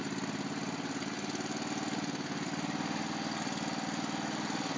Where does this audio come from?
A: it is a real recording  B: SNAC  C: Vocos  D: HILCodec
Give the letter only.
A